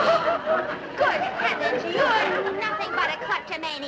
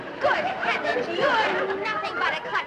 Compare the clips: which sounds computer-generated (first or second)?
second